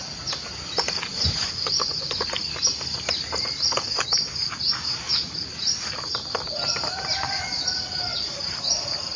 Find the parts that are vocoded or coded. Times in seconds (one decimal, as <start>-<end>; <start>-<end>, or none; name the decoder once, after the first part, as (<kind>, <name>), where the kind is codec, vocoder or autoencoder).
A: 1.1-2.2 (vocoder, Vocos)